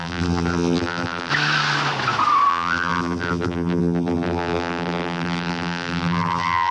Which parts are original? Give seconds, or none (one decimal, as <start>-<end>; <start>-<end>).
1.3-2.5